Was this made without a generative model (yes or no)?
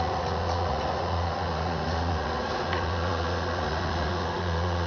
no